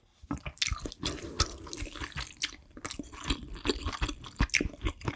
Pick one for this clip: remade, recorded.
recorded